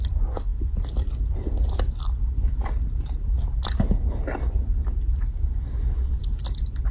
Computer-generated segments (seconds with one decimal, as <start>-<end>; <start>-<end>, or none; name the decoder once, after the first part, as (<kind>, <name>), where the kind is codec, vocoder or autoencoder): none